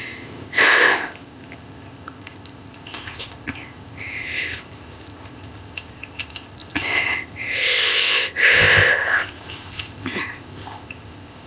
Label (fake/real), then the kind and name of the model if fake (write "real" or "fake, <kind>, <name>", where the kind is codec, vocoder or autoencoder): fake, codec, ZipCodec